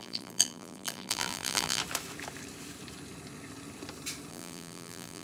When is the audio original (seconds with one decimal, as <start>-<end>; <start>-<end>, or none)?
1.8-4.3